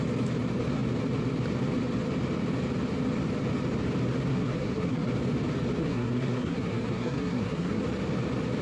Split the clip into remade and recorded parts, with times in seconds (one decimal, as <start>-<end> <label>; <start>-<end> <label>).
0.0-4.3 recorded; 4.3-5.1 remade; 5.1-5.8 recorded; 5.8-7.8 remade; 7.8-8.6 recorded